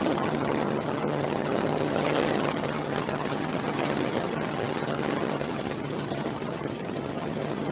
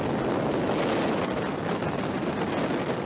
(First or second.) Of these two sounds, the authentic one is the second